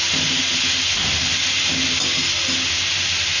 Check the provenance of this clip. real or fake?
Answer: real